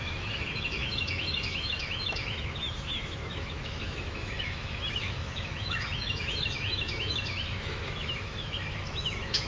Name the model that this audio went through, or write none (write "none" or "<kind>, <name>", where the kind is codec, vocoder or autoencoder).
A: autoencoder, DAC-VAE